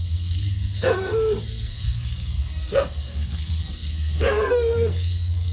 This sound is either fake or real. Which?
fake